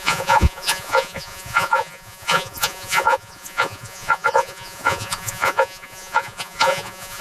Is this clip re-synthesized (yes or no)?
yes